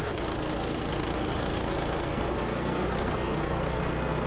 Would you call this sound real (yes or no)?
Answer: no